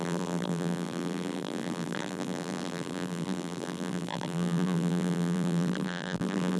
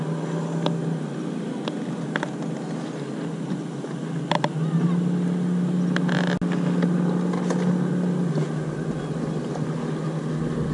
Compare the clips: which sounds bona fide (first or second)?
second